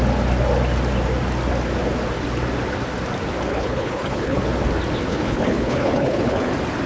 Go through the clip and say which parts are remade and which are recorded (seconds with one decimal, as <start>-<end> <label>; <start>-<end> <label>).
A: 0.0-3.5 recorded; 3.5-4.4 remade; 4.4-5.1 recorded; 5.1-6.5 remade; 6.5-6.9 recorded